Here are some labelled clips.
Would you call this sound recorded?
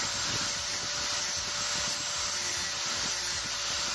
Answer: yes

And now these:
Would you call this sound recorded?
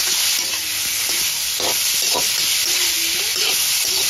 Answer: yes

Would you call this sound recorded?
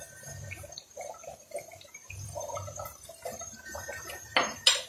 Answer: no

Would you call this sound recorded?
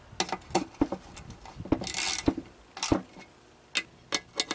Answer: yes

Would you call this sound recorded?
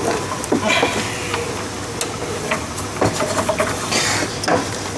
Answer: yes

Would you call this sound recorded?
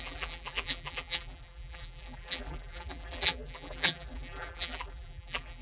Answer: no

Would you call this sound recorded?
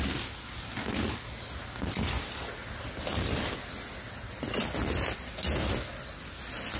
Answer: yes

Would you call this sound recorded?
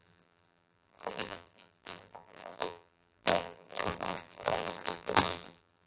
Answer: no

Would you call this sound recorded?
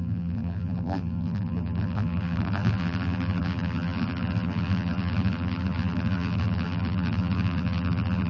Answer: no